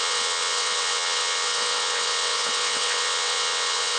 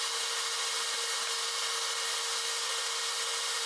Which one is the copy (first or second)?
first